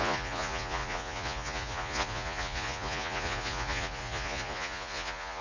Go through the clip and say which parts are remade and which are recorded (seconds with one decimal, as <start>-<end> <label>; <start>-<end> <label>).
0.0-5.4 remade

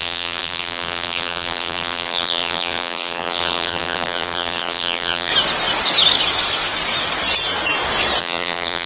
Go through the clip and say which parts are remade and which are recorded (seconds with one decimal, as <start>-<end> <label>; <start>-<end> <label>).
0.0-5.3 remade; 5.3-8.2 recorded; 8.2-8.9 remade

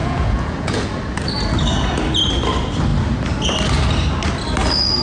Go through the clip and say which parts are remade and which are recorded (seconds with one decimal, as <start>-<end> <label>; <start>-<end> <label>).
0.0-0.9 remade; 0.9-5.0 recorded

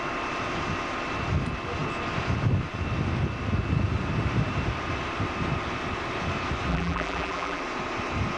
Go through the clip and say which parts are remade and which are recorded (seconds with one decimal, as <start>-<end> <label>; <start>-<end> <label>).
0.0-6.7 recorded; 6.7-7.6 remade; 7.6-8.4 recorded

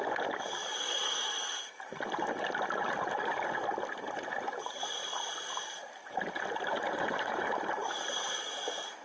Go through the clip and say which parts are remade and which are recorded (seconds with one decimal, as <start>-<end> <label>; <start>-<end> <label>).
0.0-0.6 recorded; 0.6-1.7 remade; 1.7-9.0 recorded